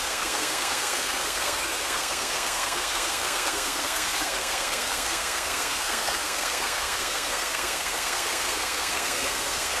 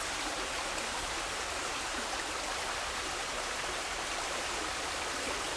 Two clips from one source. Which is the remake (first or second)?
first